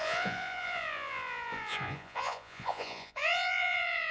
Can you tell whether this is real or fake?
fake